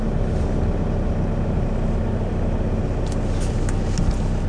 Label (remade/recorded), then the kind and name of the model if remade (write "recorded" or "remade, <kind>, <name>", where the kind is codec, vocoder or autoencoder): recorded